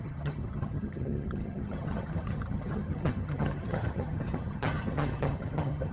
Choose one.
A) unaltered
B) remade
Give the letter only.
B